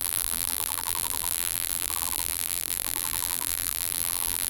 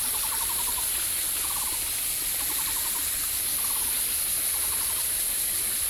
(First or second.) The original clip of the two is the second